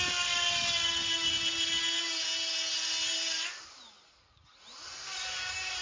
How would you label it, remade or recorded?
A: recorded